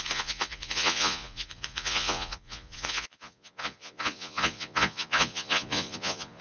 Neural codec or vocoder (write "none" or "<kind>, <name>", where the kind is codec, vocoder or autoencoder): vocoder, Vocos